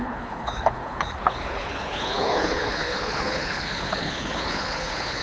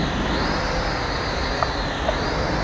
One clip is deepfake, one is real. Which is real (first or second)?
second